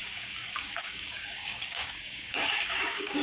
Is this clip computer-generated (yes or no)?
yes